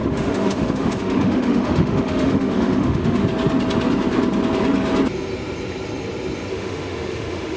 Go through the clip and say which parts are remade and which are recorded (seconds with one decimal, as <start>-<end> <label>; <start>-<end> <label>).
0.0-3.2 remade; 3.2-6.5 recorded; 6.5-7.6 remade